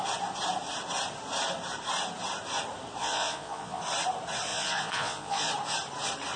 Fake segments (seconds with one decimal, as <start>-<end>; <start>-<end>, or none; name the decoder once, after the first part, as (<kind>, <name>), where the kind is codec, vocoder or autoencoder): 3.0-3.8 (vocoder, Vocos); 4.5-5.5